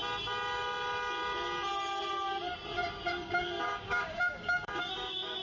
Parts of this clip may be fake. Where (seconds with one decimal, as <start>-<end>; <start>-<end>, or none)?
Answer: 3.1-5.4